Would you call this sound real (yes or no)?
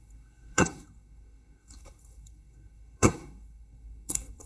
no